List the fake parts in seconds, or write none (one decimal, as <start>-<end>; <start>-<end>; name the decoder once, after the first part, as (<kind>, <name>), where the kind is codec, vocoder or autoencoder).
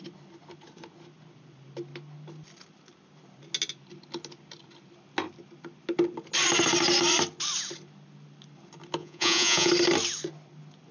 9.0-9.7 (vocoder, Vocos)